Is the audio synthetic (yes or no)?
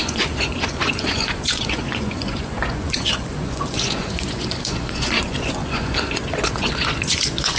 yes